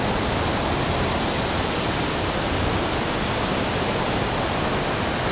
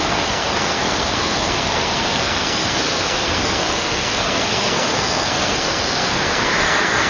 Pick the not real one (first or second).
second